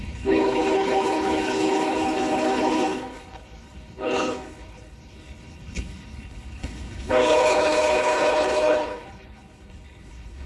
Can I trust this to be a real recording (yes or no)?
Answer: no